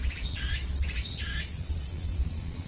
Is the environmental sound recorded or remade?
remade